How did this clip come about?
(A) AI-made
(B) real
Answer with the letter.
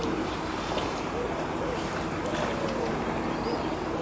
A